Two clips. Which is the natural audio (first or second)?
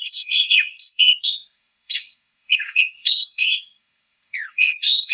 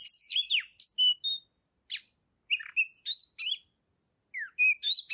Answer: second